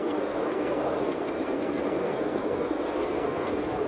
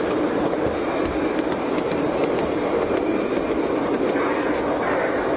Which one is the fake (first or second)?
first